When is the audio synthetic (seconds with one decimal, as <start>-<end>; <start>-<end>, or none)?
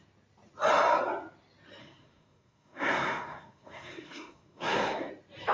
1.8-5.1